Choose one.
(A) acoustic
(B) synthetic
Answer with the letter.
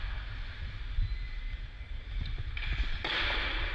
A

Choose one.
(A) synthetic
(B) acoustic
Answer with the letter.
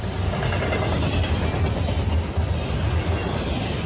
B